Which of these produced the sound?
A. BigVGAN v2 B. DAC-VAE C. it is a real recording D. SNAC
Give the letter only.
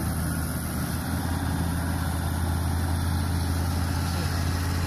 C